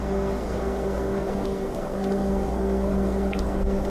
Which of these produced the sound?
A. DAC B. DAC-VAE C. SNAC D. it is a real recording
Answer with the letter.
C